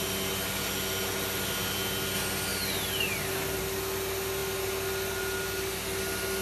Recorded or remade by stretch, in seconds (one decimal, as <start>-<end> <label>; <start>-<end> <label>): 0.0-6.4 recorded